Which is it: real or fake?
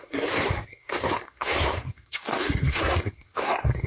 fake